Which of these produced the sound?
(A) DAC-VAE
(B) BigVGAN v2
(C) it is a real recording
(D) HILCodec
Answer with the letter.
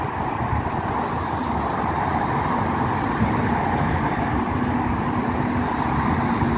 C